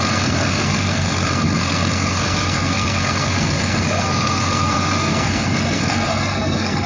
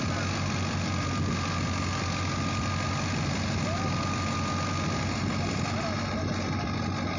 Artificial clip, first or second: first